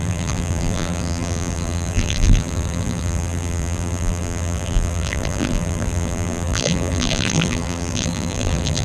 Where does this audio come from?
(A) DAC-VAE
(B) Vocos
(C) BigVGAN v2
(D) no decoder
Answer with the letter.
C